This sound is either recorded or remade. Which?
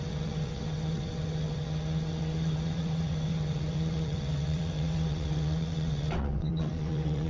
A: remade